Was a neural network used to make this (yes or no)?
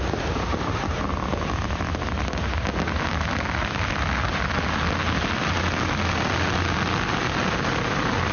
no